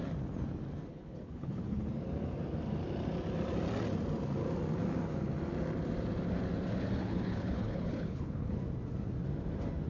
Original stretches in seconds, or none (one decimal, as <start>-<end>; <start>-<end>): 0.0-0.9; 1.8-7.0; 8.6-9.9